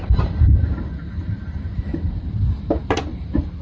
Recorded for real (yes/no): no